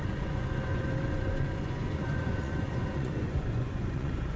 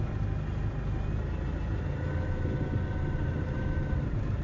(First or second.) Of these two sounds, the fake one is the first